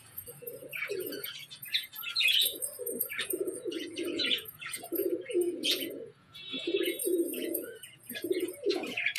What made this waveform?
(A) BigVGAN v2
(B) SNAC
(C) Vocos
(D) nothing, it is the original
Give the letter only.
C